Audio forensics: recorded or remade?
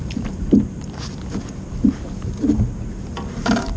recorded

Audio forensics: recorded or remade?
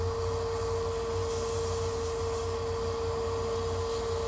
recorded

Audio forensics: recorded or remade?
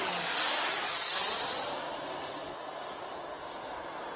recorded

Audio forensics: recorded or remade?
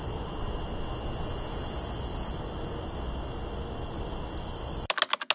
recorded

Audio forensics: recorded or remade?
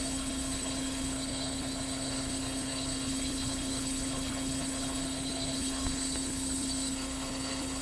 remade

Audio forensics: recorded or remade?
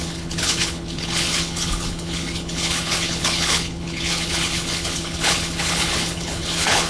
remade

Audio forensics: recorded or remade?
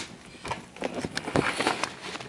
recorded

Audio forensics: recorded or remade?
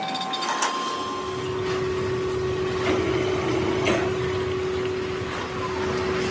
recorded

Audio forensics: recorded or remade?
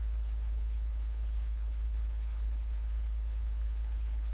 remade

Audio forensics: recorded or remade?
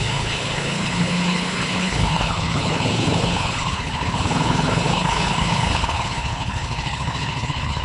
remade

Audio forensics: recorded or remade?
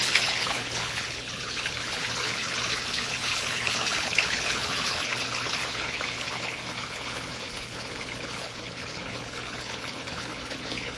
remade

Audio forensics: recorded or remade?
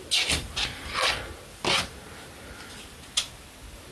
recorded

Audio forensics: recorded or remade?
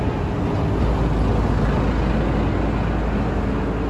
recorded